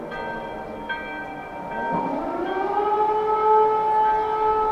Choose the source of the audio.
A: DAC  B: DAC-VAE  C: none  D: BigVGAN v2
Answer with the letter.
C